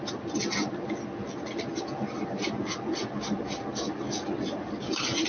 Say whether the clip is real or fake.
real